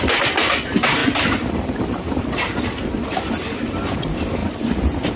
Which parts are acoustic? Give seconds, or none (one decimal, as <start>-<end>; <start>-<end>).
0.0-1.0; 2.5-4.4